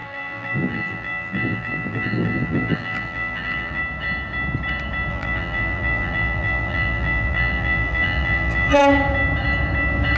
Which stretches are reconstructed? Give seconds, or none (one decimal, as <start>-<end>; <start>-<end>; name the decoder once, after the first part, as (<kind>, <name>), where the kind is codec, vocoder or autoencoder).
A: 0.0-3.8 (vocoder, BigVGAN v2); 5.1-8.8